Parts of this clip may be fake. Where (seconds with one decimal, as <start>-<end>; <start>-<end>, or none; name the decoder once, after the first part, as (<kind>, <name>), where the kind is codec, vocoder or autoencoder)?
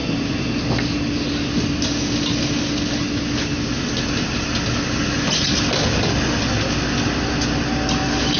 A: none